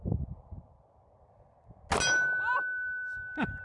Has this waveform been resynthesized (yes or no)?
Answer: no